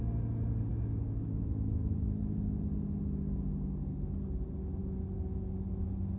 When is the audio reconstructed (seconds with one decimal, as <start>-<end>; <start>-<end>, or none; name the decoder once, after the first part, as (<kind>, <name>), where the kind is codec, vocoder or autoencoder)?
0.7-2.2 (autoencoder, DAC-VAE)

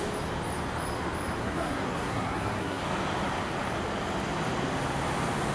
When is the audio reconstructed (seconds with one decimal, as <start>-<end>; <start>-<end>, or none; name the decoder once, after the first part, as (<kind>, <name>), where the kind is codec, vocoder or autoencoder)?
1.4-2.8 (codec, SNAC)

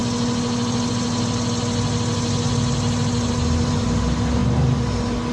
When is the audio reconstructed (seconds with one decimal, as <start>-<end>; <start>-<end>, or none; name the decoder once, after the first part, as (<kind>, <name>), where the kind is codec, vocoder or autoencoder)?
none

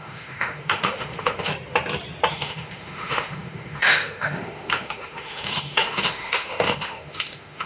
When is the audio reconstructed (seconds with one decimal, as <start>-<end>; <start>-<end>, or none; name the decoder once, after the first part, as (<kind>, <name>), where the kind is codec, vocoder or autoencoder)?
0.0-1.5 (autoencoder, DAC-VAE); 2.3-7.7

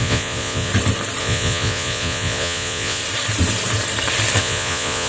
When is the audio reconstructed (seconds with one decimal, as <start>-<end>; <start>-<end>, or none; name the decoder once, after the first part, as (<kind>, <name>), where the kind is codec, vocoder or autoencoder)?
0.0-0.7 (vocoder, Vocos); 1.2-3.0; 4.4-5.1

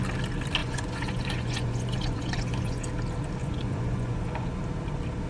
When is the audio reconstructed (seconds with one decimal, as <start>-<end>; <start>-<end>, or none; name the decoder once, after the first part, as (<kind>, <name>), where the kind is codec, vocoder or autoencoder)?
0.6-2.8 (vocoder, Vocos); 3.4-4.6

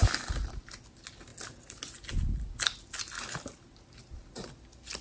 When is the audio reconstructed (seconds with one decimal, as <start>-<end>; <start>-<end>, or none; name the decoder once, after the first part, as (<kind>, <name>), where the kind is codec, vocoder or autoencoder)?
none